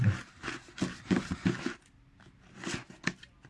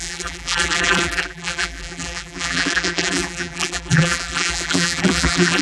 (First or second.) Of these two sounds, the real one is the first